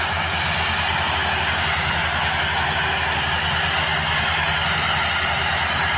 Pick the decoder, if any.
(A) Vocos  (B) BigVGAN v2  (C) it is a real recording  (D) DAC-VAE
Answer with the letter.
C